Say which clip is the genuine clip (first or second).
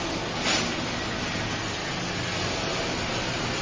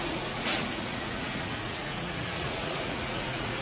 first